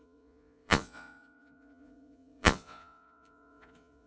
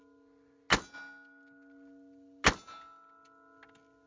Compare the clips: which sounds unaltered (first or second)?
second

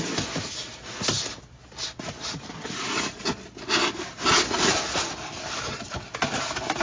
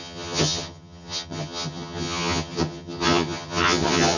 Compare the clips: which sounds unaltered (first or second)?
first